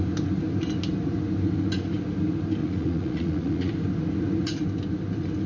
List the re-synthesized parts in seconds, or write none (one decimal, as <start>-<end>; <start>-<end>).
2.6-3.7

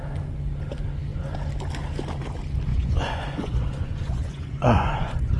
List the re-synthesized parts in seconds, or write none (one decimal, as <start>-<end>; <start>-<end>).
2.7-5.4

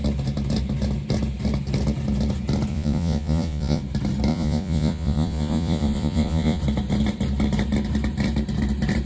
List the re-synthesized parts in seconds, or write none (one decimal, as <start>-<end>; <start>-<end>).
2.7-3.8; 4.3-6.6

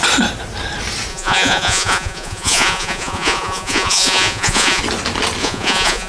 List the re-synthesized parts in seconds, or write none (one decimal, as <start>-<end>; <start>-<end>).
1.1-4.8; 5.4-6.1

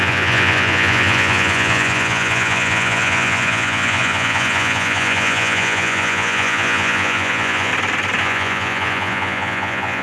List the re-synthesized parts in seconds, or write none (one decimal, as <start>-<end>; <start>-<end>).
0.0-7.7; 8.2-10.0